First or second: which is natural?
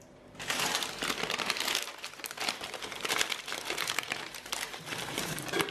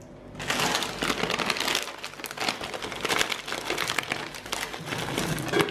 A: second